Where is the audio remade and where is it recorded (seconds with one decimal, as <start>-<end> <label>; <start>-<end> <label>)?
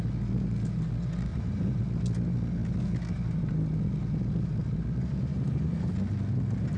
0.0-1.3 recorded; 1.3-1.8 remade; 1.8-5.3 recorded; 5.3-5.9 remade; 5.9-6.8 recorded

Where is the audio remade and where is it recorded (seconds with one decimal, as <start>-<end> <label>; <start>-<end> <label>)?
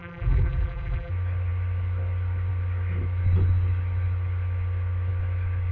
0.0-1.1 remade; 1.1-5.7 recorded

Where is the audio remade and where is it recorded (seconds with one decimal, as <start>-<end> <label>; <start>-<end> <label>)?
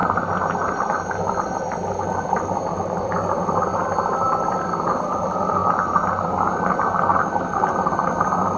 0.0-8.6 recorded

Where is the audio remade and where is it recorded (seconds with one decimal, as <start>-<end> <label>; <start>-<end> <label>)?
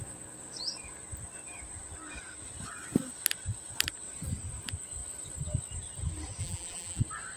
0.0-6.4 recorded; 6.4-7.0 remade; 7.0-7.4 recorded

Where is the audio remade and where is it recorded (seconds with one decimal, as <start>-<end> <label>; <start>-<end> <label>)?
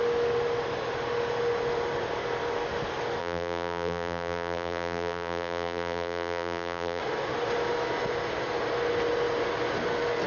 0.0-3.2 recorded; 3.2-7.0 remade; 7.0-10.3 recorded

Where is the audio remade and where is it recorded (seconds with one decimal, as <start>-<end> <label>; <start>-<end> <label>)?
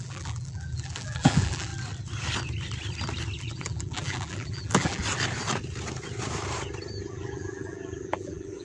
0.0-1.7 remade; 1.7-3.4 recorded; 3.4-5.0 remade; 5.0-7.1 recorded; 7.1-8.6 remade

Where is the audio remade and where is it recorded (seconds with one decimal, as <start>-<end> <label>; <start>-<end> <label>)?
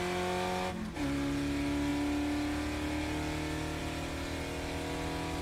0.0-5.4 recorded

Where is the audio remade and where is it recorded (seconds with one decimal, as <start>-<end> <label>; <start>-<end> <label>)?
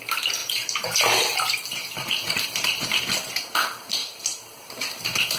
0.0-0.4 recorded; 0.4-3.0 remade; 3.0-4.0 recorded; 4.0-4.7 remade; 4.7-5.4 recorded